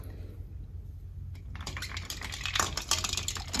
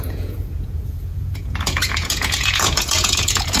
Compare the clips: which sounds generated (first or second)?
second